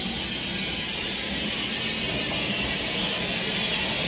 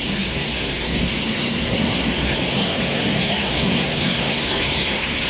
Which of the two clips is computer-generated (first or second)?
second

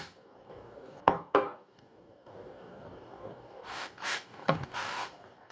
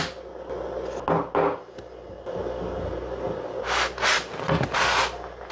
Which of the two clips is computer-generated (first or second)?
first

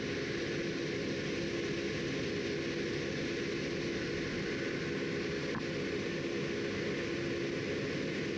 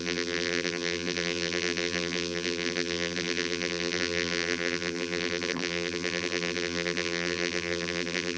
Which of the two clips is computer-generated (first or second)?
second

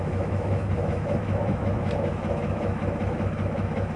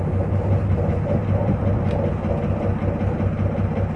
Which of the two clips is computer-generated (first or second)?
first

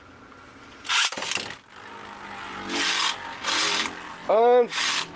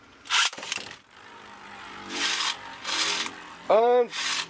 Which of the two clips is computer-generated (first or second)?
second